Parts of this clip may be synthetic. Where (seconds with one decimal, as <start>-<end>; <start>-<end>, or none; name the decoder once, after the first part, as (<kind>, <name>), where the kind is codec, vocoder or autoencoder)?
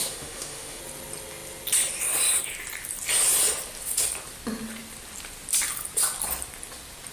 0.0-0.8 (autoencoder, DAC-VAE)